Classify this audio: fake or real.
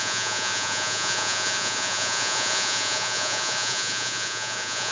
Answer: fake